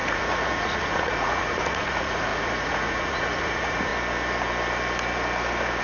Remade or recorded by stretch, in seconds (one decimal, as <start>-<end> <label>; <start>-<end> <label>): 0.0-3.9 remade; 3.9-5.8 recorded